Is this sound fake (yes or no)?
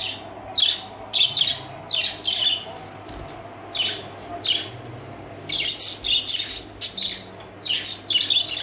no